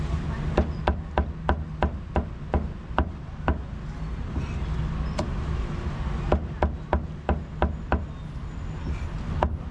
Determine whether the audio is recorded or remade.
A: recorded